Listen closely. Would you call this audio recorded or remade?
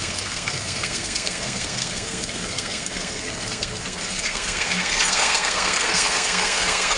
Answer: remade